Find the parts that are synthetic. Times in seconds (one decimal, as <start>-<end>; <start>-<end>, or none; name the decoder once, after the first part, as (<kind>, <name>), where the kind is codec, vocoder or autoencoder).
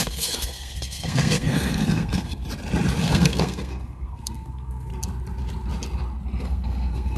0.0-2.4 (codec, SNAC); 3.0-4.9; 6.4-7.2